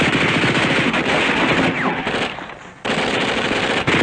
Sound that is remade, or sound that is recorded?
recorded